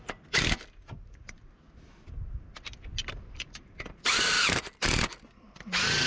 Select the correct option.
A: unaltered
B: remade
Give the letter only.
A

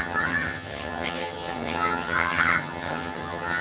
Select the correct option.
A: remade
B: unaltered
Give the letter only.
A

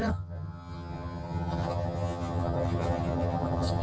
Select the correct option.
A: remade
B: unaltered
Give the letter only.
A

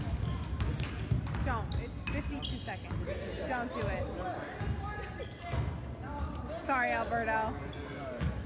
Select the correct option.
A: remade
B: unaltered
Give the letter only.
B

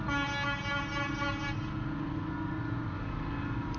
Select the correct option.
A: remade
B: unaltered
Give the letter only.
B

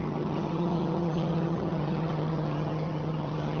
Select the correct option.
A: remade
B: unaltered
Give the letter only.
A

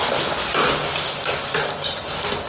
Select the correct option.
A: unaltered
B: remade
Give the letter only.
A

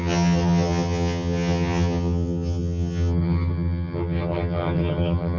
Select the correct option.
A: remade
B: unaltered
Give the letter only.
A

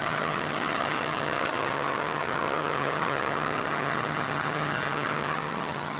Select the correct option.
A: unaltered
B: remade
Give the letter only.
B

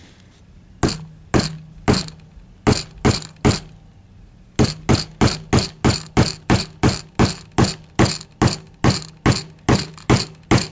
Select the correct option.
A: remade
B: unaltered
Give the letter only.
B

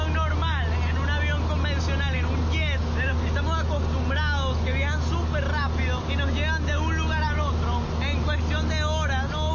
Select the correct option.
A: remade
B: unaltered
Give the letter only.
B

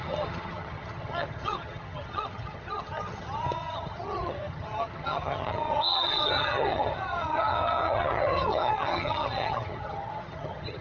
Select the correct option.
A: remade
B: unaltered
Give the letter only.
A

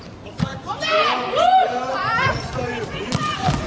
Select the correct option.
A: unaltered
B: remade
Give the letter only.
A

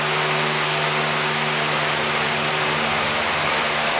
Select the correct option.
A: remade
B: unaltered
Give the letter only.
B